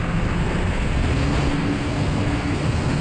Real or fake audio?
fake